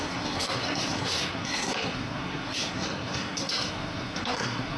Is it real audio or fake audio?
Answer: fake